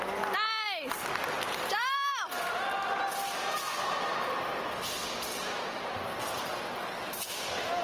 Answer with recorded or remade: recorded